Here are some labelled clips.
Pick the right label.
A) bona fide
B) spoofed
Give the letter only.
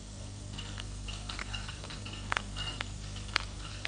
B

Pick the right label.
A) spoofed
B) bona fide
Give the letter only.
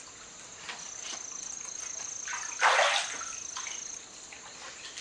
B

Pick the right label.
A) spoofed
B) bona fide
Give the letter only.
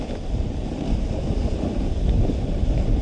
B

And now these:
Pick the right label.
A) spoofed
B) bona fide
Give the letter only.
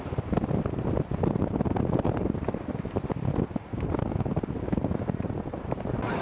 B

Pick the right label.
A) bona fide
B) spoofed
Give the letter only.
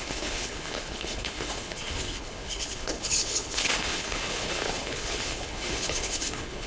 B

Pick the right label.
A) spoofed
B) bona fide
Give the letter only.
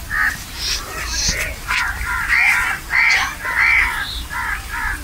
B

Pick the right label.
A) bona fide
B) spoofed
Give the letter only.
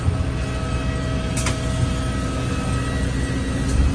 A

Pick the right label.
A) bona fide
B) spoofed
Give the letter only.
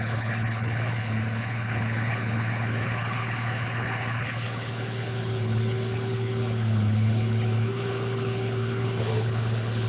B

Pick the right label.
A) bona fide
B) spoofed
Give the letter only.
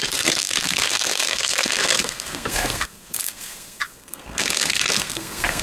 B